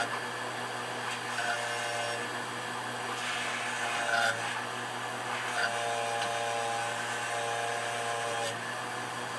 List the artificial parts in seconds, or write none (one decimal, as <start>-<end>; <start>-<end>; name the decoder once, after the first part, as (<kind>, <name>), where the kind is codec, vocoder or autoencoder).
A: none

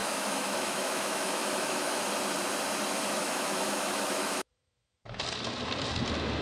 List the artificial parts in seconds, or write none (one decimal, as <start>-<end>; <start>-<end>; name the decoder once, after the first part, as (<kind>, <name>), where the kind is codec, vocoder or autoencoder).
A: 0.0-2.0 (autoencoder, DAC-VAE); 3.2-5.2

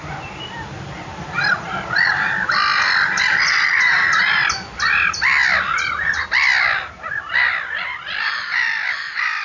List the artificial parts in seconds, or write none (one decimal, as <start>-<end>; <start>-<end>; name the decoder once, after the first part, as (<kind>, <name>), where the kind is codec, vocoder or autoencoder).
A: none

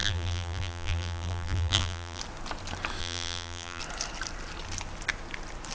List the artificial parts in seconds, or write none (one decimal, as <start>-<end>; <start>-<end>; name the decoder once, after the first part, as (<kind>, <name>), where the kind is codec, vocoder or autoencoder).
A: 0.0-2.2 (vocoder, BigVGAN v2); 3.0-3.8

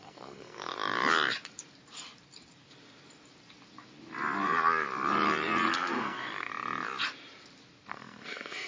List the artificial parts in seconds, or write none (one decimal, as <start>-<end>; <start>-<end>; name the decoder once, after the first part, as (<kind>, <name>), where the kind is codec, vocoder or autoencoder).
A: 0.0-0.7 (codec, SNAC); 5.7-6.5; 7.9-8.7

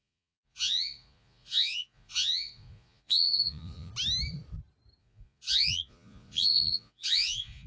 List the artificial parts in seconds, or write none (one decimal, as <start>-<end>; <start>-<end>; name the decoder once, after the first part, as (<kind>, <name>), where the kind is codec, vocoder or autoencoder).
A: 0.0-3.9 (vocoder, Vocos); 5.0-7.7

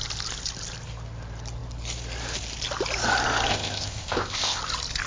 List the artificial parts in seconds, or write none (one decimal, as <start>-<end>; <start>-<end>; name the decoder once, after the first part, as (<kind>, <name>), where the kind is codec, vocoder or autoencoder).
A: 3.5-4.6 (codec, ZipCodec)